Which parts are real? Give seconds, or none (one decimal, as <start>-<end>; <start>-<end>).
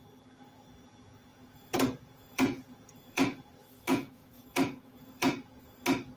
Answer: 0.0-1.3; 3.5-3.9; 5.8-6.2